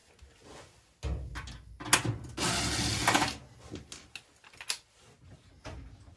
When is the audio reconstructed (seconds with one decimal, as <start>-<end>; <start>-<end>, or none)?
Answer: none